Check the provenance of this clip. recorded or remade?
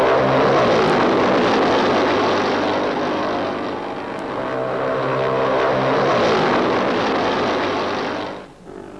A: recorded